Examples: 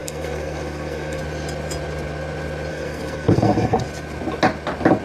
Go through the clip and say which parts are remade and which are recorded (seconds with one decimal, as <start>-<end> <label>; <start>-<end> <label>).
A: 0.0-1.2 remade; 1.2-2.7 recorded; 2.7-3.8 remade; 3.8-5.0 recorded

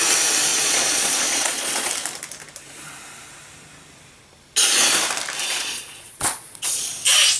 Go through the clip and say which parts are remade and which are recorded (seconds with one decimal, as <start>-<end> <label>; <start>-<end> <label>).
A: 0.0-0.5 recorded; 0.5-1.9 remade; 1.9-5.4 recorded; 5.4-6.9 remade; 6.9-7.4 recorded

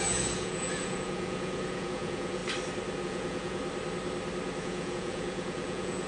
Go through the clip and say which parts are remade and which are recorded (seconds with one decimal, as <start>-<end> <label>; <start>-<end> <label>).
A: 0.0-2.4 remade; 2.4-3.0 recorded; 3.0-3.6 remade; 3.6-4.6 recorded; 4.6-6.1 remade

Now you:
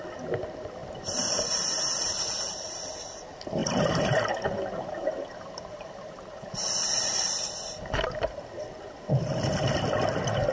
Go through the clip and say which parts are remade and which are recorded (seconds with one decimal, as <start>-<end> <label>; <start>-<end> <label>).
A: 0.0-0.8 recorded; 0.8-2.9 remade; 2.9-3.6 recorded; 3.6-7.4 remade; 7.4-10.5 recorded

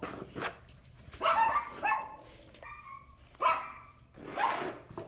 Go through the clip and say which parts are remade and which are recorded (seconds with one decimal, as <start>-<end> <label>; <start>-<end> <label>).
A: 0.0-5.1 recorded

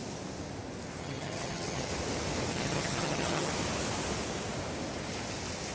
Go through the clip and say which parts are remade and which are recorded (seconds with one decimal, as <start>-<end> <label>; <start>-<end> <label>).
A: 0.0-1.0 recorded; 1.0-1.9 remade; 1.9-2.5 recorded; 2.5-3.5 remade; 3.5-5.7 recorded